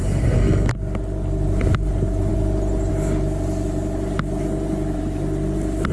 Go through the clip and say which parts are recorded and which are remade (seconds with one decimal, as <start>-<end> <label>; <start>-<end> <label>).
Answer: 0.0-0.7 remade; 0.7-5.9 recorded